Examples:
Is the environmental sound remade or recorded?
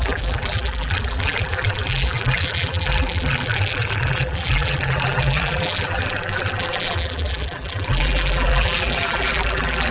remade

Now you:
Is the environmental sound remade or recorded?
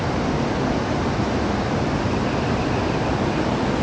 recorded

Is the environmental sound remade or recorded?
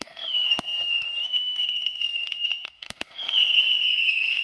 remade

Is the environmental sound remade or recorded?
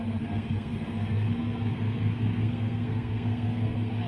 remade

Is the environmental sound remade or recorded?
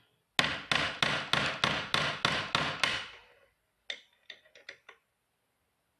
recorded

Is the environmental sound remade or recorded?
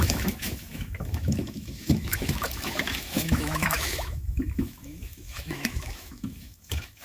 remade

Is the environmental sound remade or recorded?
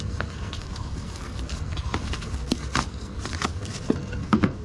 remade